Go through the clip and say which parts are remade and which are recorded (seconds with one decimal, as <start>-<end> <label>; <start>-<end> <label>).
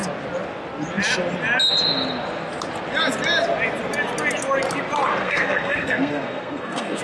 0.0-5.2 recorded; 5.2-7.0 remade